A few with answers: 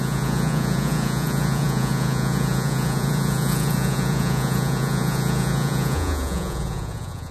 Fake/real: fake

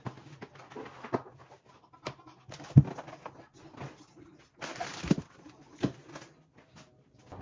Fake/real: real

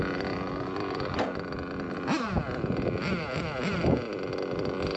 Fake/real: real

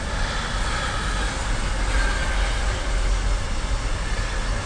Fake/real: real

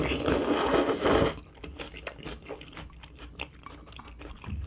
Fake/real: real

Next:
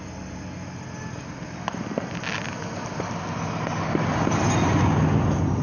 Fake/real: real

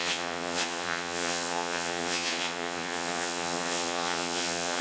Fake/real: fake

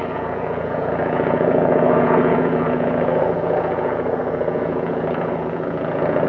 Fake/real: fake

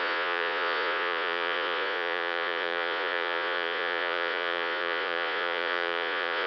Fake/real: fake